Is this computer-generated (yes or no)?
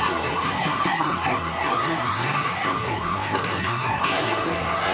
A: yes